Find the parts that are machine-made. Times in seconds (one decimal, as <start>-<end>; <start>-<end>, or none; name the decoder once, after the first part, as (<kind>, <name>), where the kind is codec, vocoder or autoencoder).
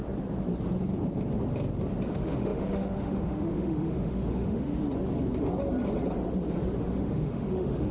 2.1-4.7 (autoencoder, DAC-VAE); 6.8-7.9